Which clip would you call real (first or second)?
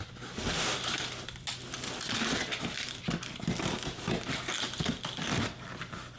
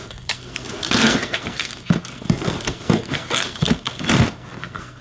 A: first